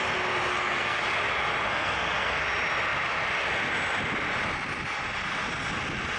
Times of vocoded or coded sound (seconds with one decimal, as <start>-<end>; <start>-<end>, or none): 0.5-1.0; 1.7-2.4